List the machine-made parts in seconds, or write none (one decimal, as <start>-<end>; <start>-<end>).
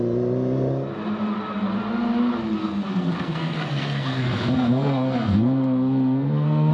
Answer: 2.6-6.7